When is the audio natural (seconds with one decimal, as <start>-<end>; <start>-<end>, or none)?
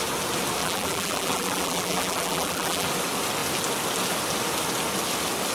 0.0-0.6; 2.9-5.5